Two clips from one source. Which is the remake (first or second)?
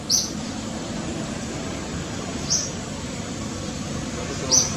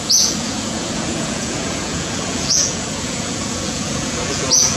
second